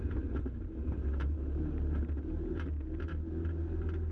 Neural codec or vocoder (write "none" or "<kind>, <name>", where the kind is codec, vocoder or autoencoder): none